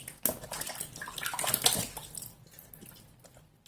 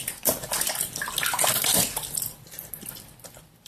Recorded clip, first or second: first